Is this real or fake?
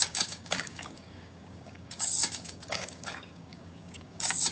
fake